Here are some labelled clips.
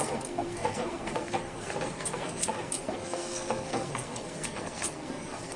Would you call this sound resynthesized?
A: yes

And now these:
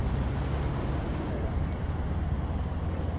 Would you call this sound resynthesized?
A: no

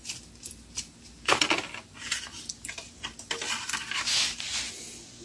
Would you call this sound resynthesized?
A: no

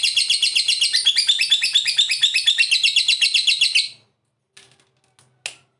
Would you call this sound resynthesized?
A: no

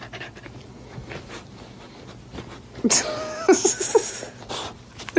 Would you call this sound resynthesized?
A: no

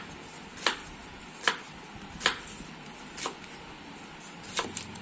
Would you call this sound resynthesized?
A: no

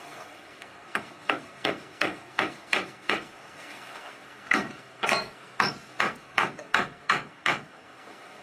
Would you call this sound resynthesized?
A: yes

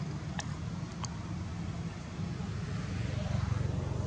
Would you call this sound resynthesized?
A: no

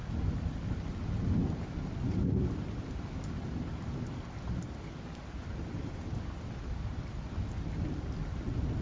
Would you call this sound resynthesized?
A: no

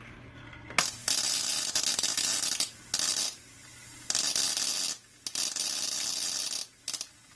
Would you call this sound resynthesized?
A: no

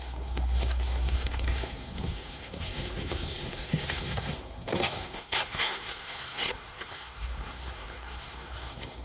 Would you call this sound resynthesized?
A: yes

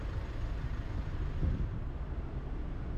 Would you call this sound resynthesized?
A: no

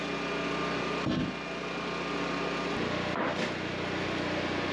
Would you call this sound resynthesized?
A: no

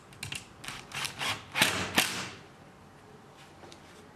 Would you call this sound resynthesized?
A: no